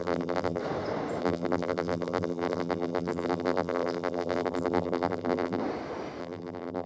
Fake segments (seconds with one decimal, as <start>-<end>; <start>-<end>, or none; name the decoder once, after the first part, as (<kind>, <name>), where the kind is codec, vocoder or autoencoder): 0.0-0.6 (vocoder, BigVGAN v2); 1.2-5.6; 6.2-6.9